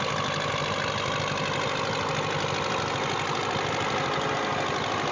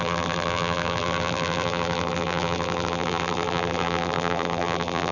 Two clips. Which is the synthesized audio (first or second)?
second